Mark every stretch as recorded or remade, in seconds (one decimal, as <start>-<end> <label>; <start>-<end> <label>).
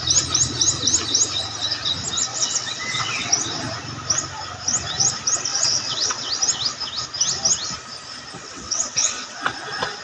0.0-2.3 recorded; 2.3-3.3 remade; 3.3-5.5 recorded; 5.5-6.3 remade; 6.3-8.4 recorded; 8.4-9.4 remade; 9.4-10.0 recorded